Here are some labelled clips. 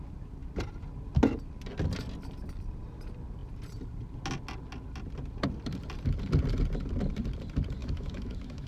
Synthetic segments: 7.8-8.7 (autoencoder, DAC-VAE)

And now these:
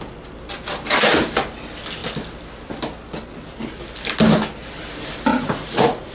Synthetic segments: 5.3-6.1 (vocoder, Vocos)

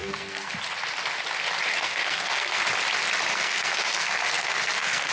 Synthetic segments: 0.0-0.5 (codec, SNAC); 1.7-2.6; 3.3-5.1

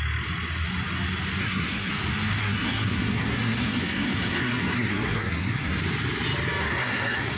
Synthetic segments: 1.4-1.9 (codec, SNAC); 2.4-5.8; 6.6-7.4

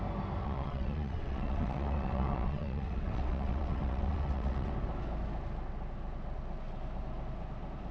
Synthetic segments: 0.4-4.7 (vocoder, WaveNeXt)

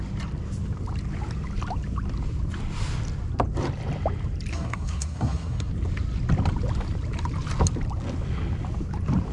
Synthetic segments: 4.5-5.7 (codec, SNAC)

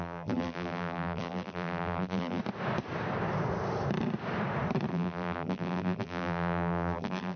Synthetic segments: 0.0-2.4 (vocoder, BigVGAN v2); 4.9-7.4